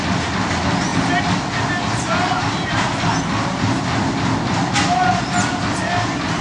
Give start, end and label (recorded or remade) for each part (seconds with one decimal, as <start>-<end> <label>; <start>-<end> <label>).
0.0-6.4 recorded